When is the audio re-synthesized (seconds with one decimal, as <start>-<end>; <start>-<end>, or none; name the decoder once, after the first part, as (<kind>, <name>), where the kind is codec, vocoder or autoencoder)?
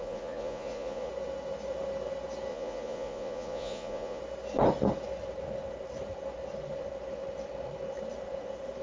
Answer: 0.0-1.1 (vocoder, Vocos); 2.5-4.2